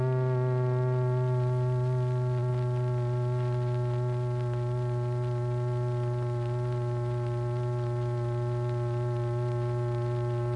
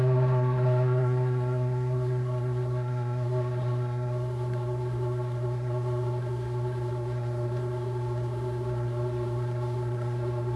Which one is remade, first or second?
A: second